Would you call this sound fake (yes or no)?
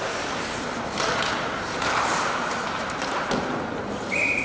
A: yes